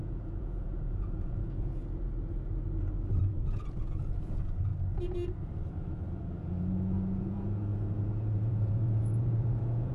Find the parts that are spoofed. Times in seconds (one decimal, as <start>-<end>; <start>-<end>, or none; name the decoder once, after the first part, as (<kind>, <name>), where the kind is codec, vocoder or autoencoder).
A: 0.0-1.8 (vocoder, Vocos); 3.2-4.7; 6.4-9.9